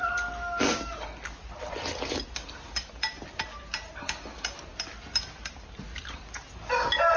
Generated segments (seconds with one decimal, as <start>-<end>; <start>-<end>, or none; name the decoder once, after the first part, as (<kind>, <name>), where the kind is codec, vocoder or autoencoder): none